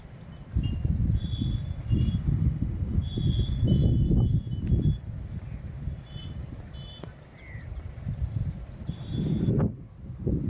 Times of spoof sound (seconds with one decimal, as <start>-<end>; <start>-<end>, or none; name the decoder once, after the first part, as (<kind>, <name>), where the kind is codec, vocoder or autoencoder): 2.4-3.0 (autoencoder, DAC-VAE)